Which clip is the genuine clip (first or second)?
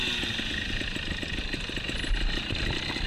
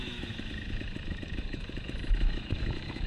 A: first